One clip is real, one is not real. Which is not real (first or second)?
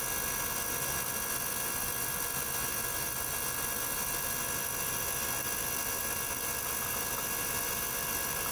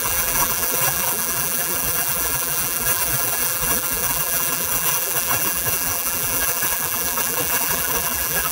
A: second